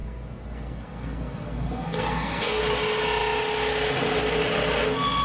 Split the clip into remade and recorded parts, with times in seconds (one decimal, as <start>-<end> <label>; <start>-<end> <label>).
0.0-2.6 remade; 2.6-5.2 recorded